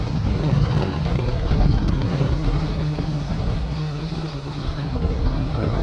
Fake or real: fake